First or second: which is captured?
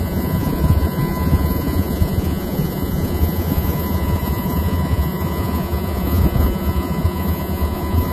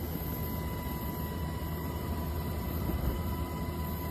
second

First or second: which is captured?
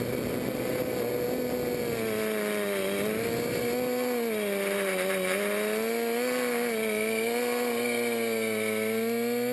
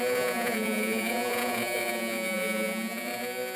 first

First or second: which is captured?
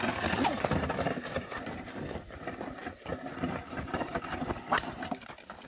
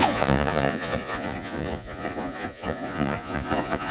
first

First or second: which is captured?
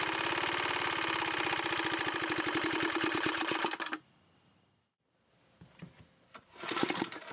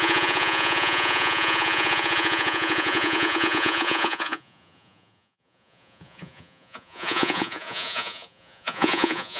first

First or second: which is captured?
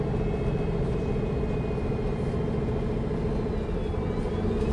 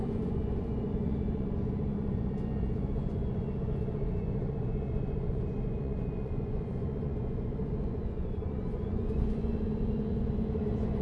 first